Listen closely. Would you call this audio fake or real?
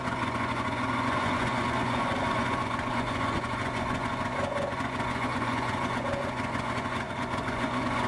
fake